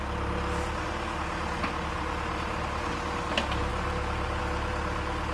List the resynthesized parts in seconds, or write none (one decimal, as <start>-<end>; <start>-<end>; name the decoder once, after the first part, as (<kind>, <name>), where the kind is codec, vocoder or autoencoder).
3.7-4.4 (vocoder, BigVGAN v2)